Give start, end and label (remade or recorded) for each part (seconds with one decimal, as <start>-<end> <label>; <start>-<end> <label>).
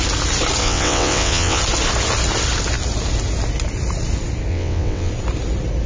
0.0-0.6 recorded; 0.6-1.6 remade; 1.6-4.5 recorded; 4.5-5.1 remade; 5.1-5.9 recorded